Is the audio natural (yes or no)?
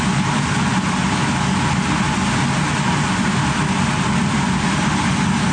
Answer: yes